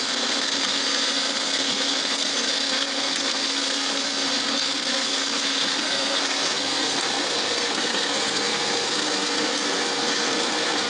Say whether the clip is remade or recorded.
remade